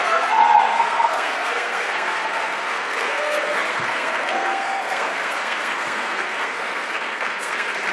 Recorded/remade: remade